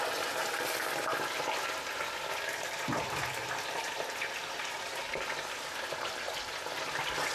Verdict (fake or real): real